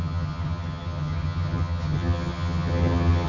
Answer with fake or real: fake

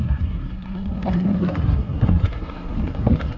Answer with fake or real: fake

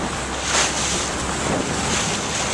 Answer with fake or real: real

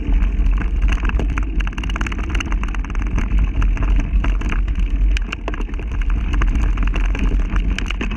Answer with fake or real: real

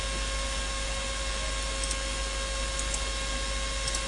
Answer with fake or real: real